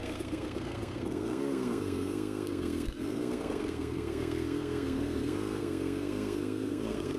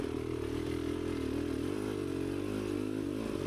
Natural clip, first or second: second